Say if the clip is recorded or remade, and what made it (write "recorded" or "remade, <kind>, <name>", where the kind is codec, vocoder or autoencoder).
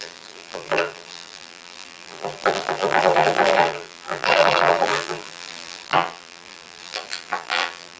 remade, vocoder, BigVGAN v2